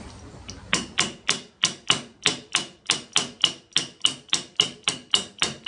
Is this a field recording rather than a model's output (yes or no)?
yes